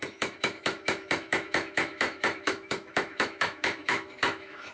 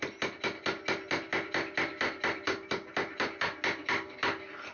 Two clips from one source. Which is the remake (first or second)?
first